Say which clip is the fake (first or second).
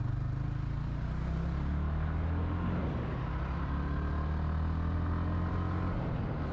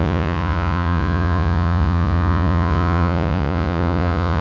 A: second